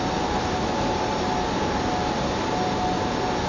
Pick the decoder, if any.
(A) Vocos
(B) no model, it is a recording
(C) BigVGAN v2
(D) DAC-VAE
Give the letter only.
B